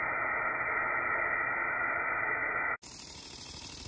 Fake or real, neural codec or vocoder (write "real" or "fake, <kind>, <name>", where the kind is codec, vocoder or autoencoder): real